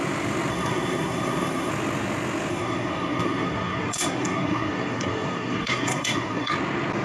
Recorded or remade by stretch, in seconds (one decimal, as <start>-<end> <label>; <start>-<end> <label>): 0.0-0.5 recorded; 0.5-1.7 remade; 1.7-2.5 recorded; 2.5-6.5 remade; 6.5-7.0 recorded